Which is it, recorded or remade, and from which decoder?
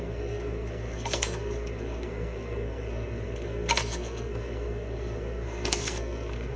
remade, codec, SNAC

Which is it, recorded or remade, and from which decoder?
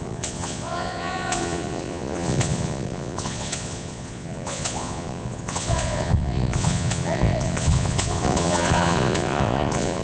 remade, vocoder, Vocos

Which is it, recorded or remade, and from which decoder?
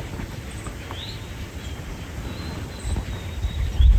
recorded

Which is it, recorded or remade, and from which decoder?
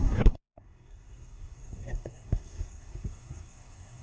remade, codec, SNAC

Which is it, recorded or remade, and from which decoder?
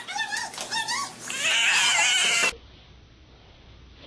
recorded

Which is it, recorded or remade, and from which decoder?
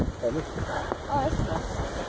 recorded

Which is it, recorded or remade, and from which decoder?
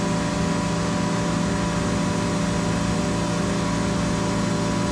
recorded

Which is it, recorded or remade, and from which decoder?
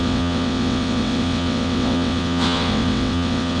remade, vocoder, WaveNeXt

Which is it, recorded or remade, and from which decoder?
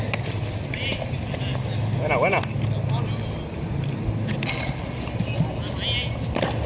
recorded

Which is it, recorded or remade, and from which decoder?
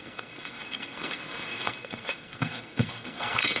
remade, codec, SNAC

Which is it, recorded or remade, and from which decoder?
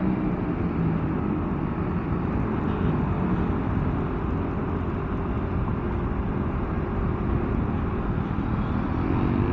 recorded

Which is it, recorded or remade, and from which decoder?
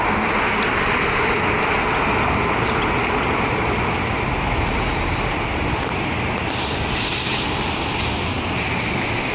recorded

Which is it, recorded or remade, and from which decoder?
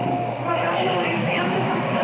remade, codec, DAC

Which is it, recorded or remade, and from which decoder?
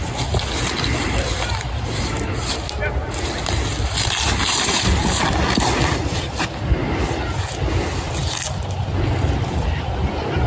recorded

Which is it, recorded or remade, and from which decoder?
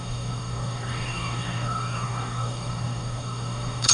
remade, codec, DAC